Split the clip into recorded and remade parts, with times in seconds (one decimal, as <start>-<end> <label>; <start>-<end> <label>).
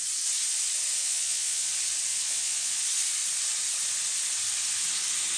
0.0-1.0 recorded; 1.0-1.7 remade; 1.7-2.1 recorded; 2.1-2.8 remade; 2.8-5.4 recorded